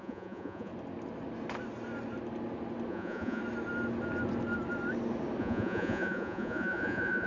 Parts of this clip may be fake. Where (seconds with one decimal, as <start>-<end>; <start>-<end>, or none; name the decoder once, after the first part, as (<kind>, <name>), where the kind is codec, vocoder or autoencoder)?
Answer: 0.0-0.7 (vocoder, Vocos); 2.9-3.4; 5.4-7.3